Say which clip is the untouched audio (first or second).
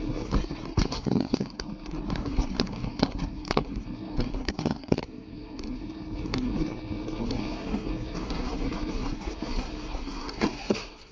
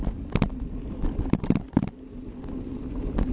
second